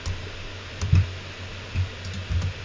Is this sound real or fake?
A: fake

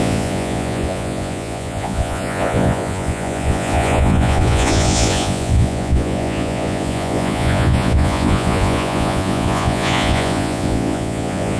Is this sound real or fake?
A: fake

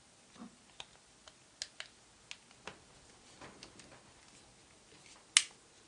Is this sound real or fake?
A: real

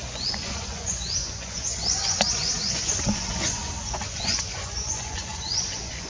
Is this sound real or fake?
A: fake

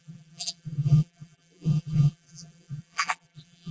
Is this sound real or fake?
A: fake